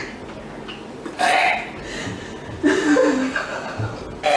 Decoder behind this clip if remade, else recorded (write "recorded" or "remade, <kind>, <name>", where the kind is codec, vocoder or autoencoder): recorded